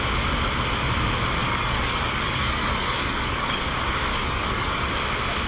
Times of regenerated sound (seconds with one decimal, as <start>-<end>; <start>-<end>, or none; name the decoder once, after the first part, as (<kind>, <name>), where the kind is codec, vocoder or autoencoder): 1.4-3.6 (codec, DAC); 4.1-4.8